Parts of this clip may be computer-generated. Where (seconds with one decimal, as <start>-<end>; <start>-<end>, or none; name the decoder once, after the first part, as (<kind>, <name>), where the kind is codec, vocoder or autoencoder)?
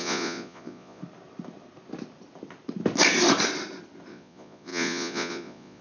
0.0-1.0 (vocoder, Vocos); 4.1-5.8